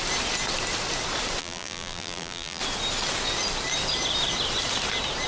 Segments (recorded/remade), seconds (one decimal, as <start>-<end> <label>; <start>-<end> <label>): 0.0-1.4 recorded; 1.4-2.6 remade; 2.6-5.3 recorded